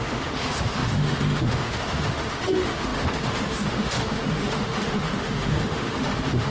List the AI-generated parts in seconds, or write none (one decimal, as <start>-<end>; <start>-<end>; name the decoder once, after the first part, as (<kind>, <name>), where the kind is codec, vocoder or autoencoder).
0.0-6.5 (autoencoder, DAC-VAE)